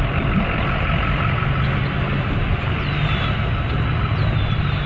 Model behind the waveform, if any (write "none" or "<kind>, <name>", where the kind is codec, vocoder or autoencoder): none